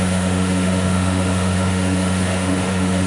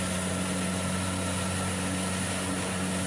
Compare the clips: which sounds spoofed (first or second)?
first